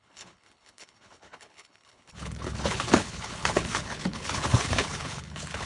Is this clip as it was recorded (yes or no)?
no